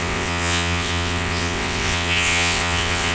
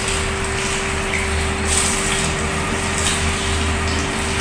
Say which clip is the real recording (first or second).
second